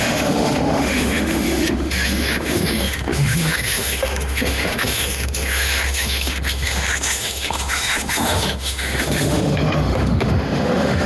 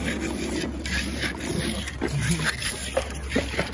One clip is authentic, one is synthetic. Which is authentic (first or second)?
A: second